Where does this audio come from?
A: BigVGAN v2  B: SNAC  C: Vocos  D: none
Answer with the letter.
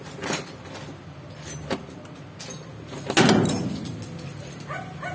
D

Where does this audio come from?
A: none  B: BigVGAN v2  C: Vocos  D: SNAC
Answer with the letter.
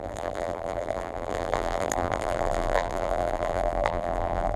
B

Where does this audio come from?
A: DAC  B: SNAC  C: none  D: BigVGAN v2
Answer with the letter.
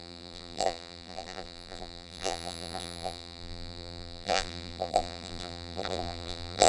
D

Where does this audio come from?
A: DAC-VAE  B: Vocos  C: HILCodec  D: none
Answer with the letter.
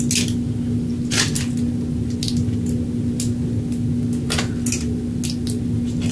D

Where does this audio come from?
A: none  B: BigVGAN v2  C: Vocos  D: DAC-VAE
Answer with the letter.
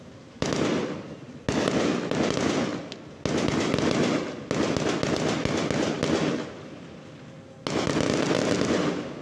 A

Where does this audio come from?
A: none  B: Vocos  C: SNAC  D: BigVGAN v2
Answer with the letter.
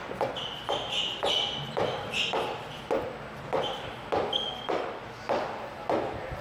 A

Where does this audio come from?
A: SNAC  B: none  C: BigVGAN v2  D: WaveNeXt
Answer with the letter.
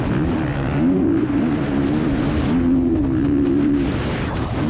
B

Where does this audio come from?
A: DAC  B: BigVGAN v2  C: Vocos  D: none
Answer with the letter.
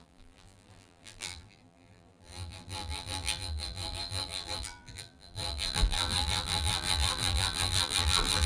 B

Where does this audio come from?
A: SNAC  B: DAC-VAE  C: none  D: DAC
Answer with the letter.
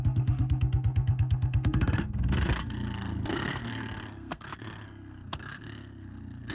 A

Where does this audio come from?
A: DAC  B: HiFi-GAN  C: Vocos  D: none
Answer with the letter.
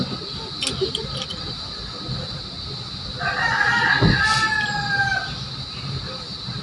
D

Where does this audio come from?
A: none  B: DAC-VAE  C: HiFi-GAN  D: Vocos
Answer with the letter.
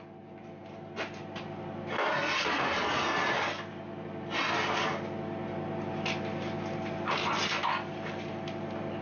A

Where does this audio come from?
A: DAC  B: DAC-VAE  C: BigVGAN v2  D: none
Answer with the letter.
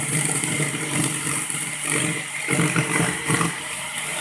C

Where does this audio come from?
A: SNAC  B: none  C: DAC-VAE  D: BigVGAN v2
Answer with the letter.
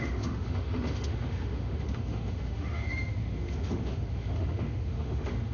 C